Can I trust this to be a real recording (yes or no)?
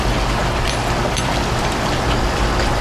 yes